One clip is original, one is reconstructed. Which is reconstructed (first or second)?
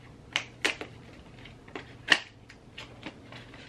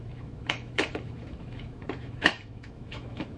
second